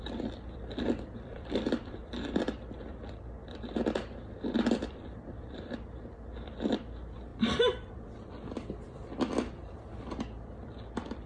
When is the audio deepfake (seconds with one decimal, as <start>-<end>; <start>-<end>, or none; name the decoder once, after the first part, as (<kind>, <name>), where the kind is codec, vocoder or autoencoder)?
0.0-11.3 (vocoder, BigVGAN v2)